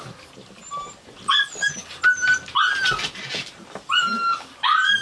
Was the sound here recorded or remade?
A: recorded